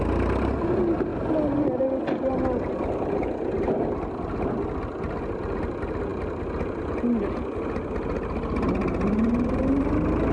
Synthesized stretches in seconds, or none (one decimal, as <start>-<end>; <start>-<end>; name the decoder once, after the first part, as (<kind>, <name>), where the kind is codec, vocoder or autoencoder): none